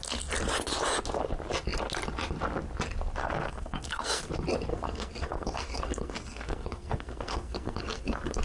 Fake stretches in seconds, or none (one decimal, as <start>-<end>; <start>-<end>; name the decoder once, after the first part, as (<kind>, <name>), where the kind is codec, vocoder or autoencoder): 3.2-4.3 (codec, SNAC); 4.7-8.4